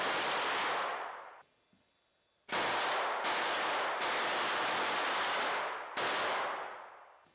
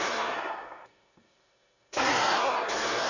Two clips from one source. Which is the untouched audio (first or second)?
first